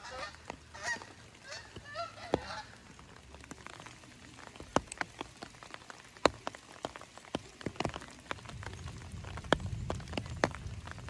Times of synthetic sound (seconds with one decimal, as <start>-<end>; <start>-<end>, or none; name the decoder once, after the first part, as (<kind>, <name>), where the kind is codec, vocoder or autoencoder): none